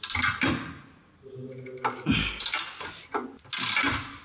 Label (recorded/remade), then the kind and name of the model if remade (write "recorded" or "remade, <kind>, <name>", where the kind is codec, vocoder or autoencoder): recorded